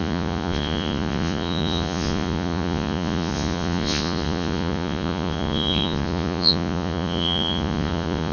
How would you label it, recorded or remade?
remade